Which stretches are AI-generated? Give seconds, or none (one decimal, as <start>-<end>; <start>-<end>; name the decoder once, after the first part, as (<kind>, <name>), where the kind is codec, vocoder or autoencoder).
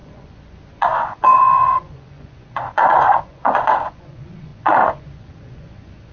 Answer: 0.0-6.1 (vocoder, Vocos)